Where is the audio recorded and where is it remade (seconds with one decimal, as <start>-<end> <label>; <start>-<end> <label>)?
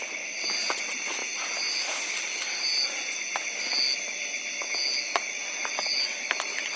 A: 0.0-6.8 recorded